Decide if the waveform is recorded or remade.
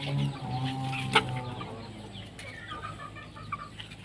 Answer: recorded